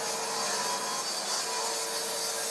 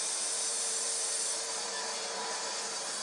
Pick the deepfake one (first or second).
second